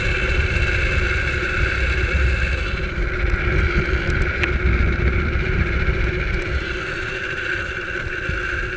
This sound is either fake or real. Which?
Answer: real